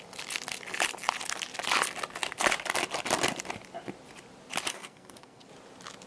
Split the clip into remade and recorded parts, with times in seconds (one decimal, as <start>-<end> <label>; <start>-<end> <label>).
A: 0.0-4.7 recorded; 4.7-5.5 remade; 5.5-6.1 recorded